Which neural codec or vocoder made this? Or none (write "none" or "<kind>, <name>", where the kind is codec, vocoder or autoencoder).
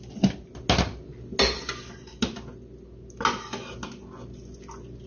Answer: none